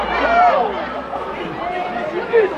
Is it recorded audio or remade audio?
recorded